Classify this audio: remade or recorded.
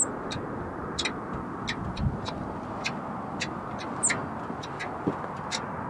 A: recorded